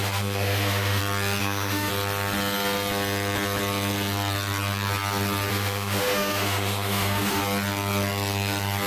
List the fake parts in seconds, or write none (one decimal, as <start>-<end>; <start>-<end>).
0.0-1.0; 1.4-1.9; 5.5-7.4